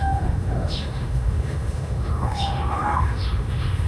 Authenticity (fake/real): fake